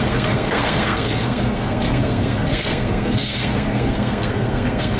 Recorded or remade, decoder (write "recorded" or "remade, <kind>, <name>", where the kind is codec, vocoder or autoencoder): remade, codec, SNAC